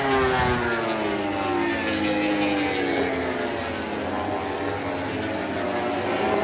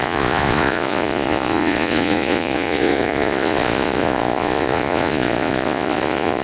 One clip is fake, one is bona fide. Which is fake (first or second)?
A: second